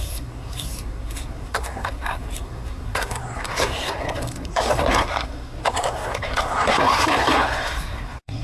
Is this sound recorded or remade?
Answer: remade